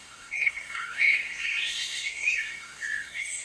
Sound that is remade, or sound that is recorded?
remade